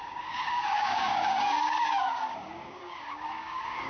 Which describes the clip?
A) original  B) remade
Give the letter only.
B